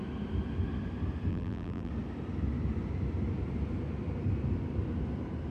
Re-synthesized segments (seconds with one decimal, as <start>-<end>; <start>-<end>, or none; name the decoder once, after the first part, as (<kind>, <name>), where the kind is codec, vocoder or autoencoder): 1.3-1.9 (vocoder, BigVGAN v2)